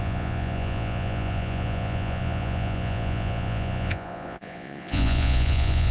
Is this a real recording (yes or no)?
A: no